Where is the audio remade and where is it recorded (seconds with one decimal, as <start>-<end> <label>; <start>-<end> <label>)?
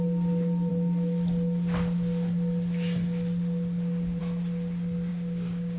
0.0-5.1 recorded; 5.1-5.8 remade